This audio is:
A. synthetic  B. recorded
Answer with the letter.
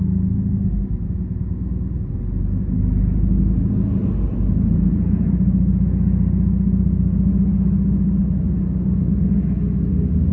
B